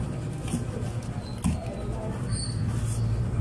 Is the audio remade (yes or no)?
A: no